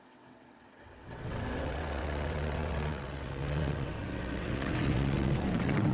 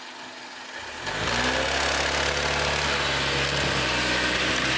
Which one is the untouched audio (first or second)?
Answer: second